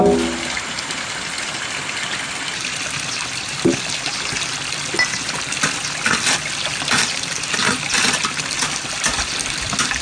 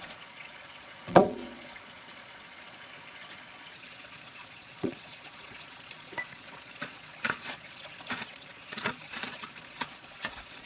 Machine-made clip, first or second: second